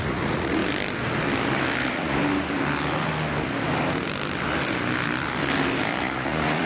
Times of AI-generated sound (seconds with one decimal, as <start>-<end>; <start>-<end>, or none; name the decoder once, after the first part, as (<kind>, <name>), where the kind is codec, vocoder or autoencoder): 0.0-0.6 (vocoder, Vocos); 1.8-2.2; 6.0-6.7